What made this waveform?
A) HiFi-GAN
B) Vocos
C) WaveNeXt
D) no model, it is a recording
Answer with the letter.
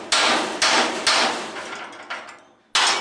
D